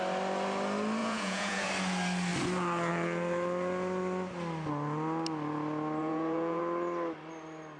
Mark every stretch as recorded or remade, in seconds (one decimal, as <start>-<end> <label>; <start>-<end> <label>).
0.0-1.0 recorded; 1.0-1.7 remade; 1.7-6.0 recorded; 6.0-6.6 remade; 6.6-7.8 recorded